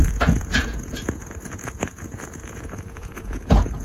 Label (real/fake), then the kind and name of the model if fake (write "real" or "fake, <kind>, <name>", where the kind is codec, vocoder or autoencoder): fake, vocoder, Vocos